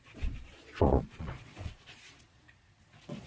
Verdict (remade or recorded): remade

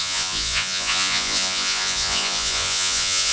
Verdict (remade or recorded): remade